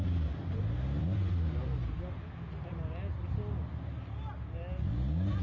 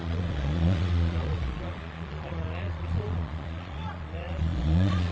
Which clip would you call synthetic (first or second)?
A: second